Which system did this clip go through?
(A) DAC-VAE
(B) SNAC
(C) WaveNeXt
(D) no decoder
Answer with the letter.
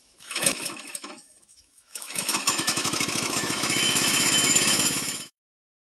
A